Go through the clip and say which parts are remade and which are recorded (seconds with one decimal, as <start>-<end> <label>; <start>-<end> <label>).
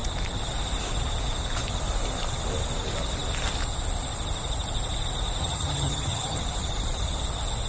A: 0.0-5.4 recorded; 5.4-6.4 remade; 6.4-7.7 recorded